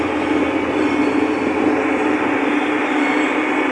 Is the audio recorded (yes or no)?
no